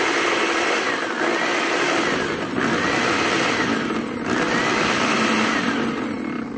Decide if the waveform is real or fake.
real